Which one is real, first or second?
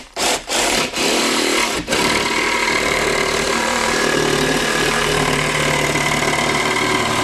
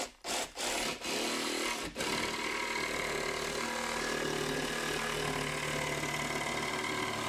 second